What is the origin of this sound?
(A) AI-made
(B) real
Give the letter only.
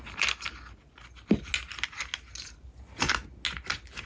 B